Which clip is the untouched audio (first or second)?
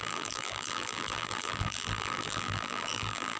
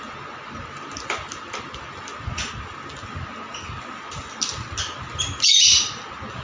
second